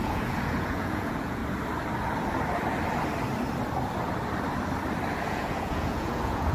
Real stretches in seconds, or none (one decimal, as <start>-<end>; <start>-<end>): 1.4-5.3